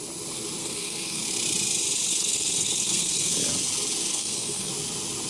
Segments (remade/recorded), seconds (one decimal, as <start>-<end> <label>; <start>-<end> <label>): 0.0-0.6 recorded; 0.6-1.2 remade; 1.2-2.1 recorded; 2.1-3.3 remade; 3.3-4.1 recorded; 4.1-4.7 remade; 4.7-5.3 recorded